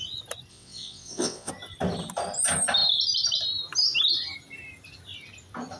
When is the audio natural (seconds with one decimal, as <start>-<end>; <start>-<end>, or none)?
0.0-0.5; 1.5-5.8